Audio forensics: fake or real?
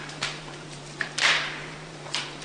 fake